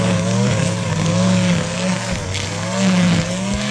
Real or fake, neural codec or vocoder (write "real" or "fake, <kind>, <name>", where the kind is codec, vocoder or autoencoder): fake, codec, DAC